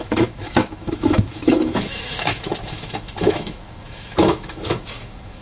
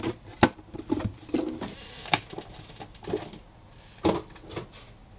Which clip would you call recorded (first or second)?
second